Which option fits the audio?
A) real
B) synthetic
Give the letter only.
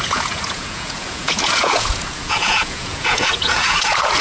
B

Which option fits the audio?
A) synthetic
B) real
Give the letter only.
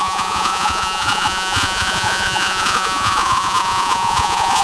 A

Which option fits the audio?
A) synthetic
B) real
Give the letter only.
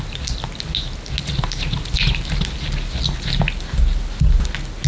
B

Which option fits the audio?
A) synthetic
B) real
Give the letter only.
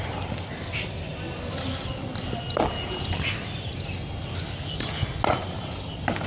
B